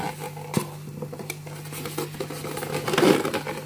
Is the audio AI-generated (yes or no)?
no